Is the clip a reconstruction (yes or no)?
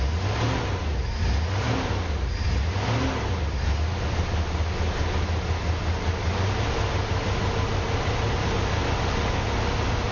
no